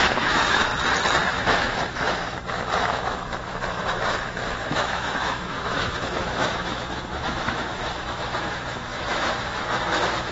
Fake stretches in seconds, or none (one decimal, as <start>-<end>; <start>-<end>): 0.0-0.7; 1.3-10.3